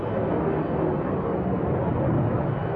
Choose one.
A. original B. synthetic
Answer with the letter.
A